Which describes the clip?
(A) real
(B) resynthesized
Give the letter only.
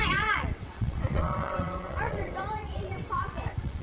B